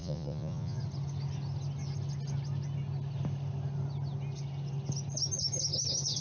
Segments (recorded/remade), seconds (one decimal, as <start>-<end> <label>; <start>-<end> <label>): 0.0-0.8 remade; 0.8-6.2 recorded